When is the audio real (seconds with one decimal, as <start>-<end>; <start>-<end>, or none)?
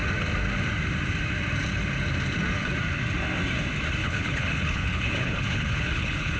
0.0-4.0